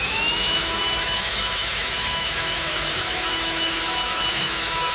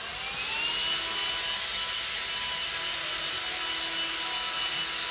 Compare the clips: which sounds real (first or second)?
second